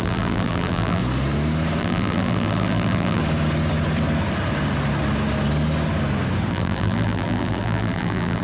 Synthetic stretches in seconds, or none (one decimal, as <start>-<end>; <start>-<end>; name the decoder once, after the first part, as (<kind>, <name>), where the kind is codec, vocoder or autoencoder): 0.0-1.0 (vocoder, BigVGAN v2); 1.8-3.2; 6.5-8.4